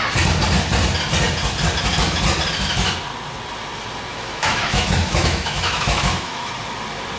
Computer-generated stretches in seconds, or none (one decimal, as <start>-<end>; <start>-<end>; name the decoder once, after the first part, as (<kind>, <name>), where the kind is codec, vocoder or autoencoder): 4.1-6.5 (autoencoder, DAC-VAE)